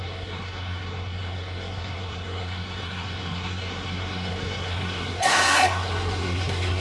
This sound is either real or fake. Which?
fake